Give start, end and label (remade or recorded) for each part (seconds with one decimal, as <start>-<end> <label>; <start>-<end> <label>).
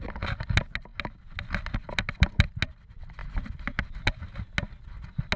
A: 0.0-5.4 recorded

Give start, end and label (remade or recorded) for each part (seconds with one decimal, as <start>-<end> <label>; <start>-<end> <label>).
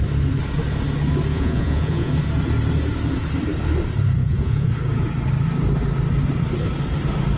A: 0.0-1.3 recorded; 1.3-2.1 remade; 2.1-4.2 recorded; 4.2-4.7 remade; 4.7-7.4 recorded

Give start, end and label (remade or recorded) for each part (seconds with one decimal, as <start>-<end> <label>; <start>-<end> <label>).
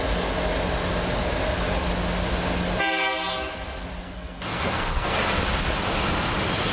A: 0.0-4.0 recorded; 4.0-5.2 remade; 5.2-6.7 recorded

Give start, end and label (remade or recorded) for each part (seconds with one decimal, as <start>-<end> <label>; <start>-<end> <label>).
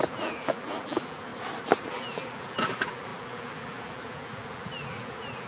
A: 0.0-1.3 remade; 1.3-1.8 recorded; 1.8-5.5 remade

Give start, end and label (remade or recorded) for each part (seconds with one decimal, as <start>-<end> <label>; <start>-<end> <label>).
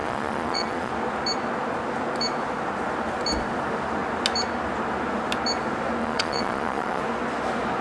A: 0.0-0.9 remade; 0.9-6.0 recorded; 6.0-7.0 remade; 7.0-7.8 recorded